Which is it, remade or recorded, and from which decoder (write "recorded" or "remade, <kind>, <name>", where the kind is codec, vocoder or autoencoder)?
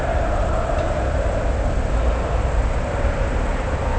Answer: recorded